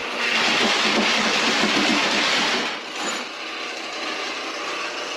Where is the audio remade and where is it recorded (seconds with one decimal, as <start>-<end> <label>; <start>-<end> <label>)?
0.0-5.2 recorded